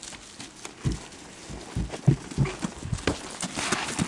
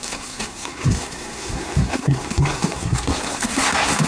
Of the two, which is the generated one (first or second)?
second